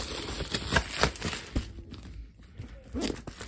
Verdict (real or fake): real